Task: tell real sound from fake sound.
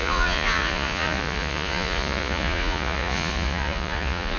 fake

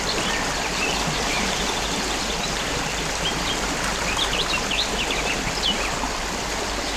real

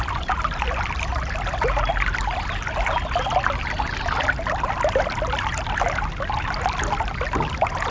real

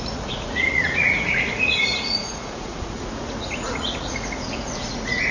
fake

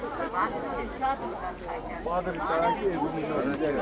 real